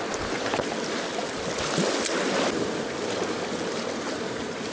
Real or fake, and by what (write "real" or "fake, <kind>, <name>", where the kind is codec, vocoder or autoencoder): real